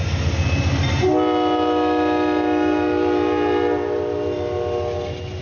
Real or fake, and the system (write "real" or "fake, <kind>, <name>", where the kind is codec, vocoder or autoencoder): real